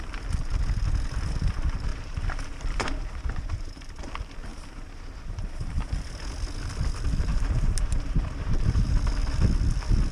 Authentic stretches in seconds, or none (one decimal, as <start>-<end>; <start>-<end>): 0.0-1.9; 4.1-4.5; 5.9-7.3; 9.0-10.1